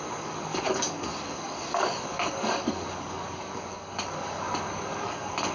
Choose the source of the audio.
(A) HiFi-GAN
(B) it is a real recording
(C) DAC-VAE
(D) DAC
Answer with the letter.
D